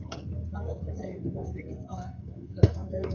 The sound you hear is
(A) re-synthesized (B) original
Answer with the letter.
A